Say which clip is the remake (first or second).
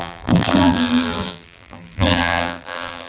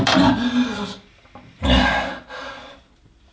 first